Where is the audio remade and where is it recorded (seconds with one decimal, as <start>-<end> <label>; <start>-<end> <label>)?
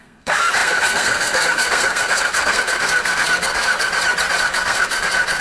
0.0-3.9 remade; 3.9-4.4 recorded; 4.4-5.4 remade